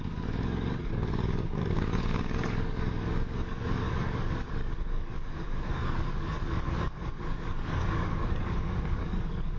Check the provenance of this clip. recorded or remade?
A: remade